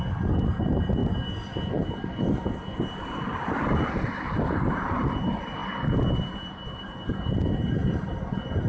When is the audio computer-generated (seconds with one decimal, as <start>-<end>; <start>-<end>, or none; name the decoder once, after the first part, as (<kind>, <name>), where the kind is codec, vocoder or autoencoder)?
none